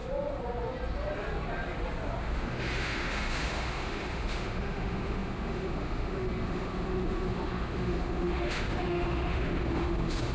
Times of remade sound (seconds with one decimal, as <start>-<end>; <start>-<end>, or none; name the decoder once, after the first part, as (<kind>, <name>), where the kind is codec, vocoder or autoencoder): 2.2-10.3 (autoencoder, DAC-VAE)